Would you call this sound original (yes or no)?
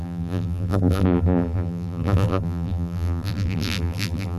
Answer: no